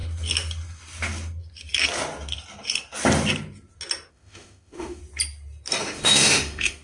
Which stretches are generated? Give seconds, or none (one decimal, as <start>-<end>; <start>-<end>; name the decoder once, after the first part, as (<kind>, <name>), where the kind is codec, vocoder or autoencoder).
4.1-5.0 (autoencoder, DAC-VAE); 5.8-6.8